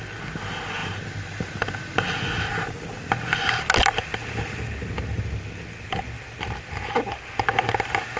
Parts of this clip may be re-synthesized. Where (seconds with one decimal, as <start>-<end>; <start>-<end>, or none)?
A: none